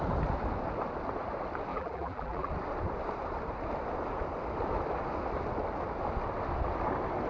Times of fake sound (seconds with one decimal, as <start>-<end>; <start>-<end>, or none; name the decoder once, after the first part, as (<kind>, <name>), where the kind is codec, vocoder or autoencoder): 1.7-2.5 (vocoder, BigVGAN v2)

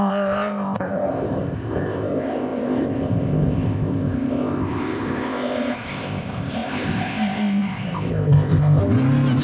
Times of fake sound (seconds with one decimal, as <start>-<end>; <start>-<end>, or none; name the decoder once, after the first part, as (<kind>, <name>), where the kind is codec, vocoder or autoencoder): 0.0-8.8 (codec, ZipCodec)

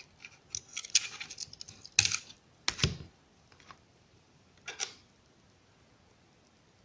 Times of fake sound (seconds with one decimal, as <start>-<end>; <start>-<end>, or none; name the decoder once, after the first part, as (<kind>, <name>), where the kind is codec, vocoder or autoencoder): 3.3-4.7 (vocoder, BigVGAN v2)

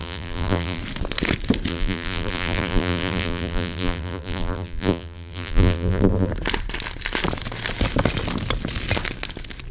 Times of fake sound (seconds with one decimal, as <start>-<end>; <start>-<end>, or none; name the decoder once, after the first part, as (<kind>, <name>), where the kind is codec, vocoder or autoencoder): 0.0-0.8 (vocoder, BigVGAN v2); 1.7-6.3

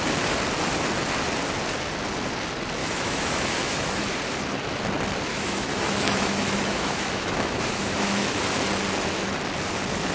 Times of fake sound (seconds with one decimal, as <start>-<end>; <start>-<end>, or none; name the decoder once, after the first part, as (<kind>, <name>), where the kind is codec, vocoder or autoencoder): 2.8-4.0 (autoencoder, DAC-VAE); 5.3-8.4

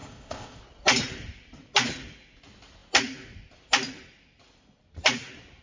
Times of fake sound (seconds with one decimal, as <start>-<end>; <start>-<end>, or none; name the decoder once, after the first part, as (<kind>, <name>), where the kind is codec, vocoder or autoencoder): 0.0-0.6 (codec, ZipCodec)

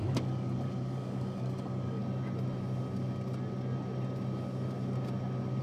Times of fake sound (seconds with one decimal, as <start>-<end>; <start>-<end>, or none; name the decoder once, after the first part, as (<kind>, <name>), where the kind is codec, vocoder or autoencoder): 0.0-2.0 (codec, DAC)